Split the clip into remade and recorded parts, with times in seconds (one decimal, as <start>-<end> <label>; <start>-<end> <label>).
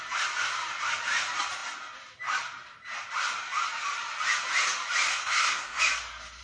0.0-5.1 recorded; 5.1-5.8 remade; 5.8-6.4 recorded